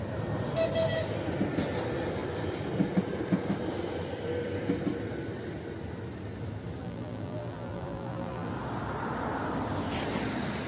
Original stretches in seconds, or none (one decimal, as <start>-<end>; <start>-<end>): 0.0-6.8; 8.5-10.7